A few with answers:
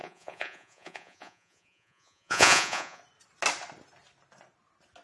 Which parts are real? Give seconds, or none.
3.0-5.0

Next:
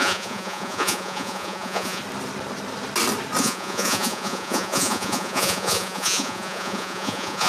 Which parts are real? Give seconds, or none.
2.0-3.4

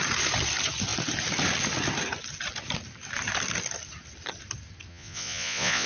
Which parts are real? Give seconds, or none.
0.0-4.9

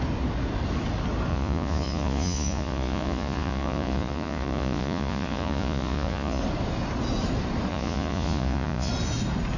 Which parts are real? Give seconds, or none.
0.0-1.3; 6.4-7.7; 8.9-9.6

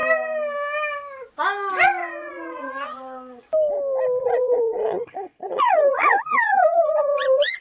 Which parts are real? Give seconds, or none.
0.0-2.0; 3.5-4.2